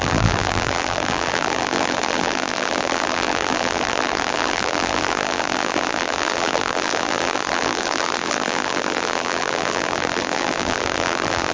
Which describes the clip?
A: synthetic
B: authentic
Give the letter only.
A